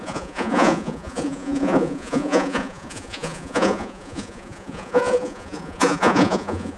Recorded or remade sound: remade